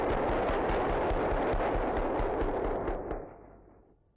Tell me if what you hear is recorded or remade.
recorded